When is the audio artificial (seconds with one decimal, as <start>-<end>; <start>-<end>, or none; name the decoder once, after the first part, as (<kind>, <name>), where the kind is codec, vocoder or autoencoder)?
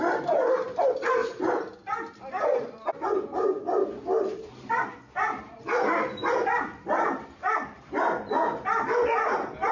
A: 0.0-1.2 (vocoder, BigVGAN v2); 4.5-9.7